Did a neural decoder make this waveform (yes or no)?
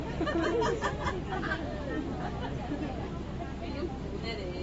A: no